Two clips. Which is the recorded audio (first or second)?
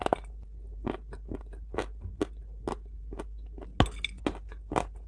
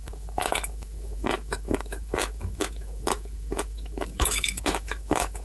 first